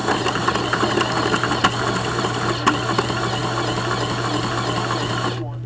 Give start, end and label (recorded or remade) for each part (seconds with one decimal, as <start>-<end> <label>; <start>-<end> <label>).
0.0-5.7 recorded